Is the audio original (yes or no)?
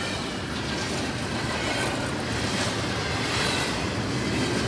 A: yes